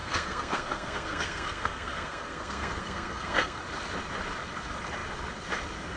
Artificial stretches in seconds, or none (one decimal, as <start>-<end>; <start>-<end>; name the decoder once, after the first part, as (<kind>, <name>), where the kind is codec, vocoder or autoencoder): 0.0-3.6 (codec, SNAC)